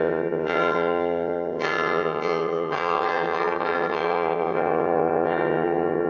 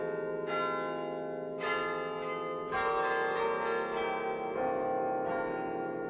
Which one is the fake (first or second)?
first